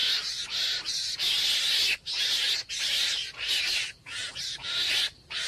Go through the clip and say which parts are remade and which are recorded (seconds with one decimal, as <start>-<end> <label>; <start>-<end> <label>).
0.0-5.5 recorded